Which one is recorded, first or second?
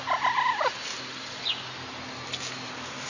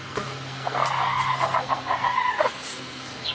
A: first